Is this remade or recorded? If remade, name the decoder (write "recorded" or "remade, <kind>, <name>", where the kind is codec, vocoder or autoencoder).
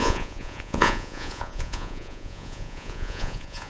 remade, vocoder, Vocos